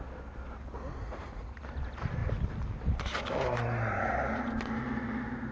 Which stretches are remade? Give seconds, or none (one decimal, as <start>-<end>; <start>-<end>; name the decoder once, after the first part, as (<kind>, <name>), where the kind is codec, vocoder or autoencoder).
1.0-1.6 (vocoder, Vocos)